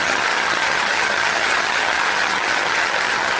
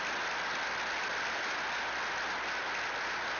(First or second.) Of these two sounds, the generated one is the first